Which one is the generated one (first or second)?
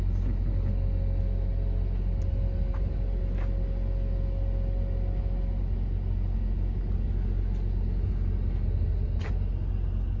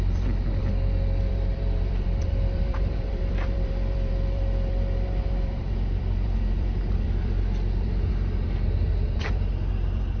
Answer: second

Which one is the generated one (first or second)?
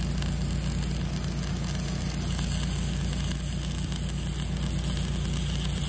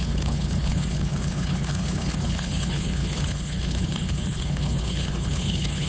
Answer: second